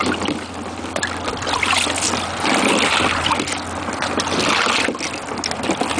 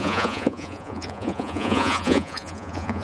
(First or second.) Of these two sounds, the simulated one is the second